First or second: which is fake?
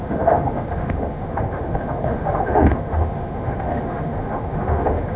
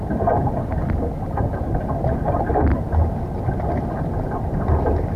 first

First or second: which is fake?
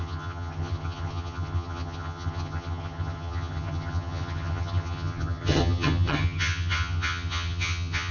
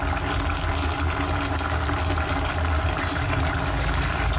first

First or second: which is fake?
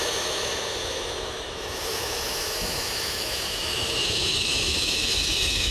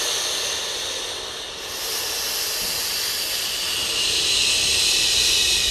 first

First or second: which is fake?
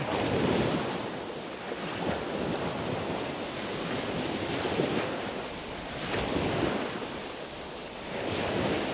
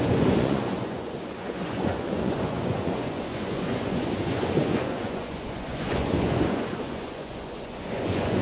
second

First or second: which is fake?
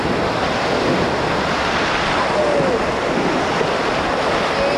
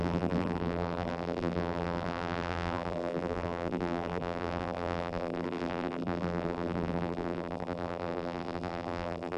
second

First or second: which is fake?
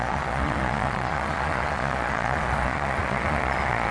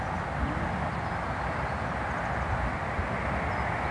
first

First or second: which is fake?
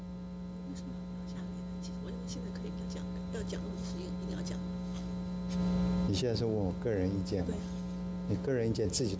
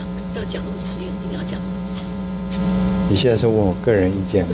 second